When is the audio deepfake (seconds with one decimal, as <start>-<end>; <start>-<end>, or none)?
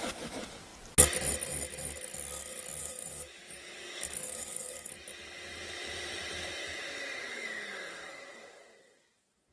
2.8-4.9; 7.3-9.5